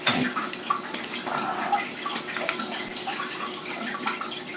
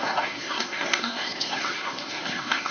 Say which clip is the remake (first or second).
second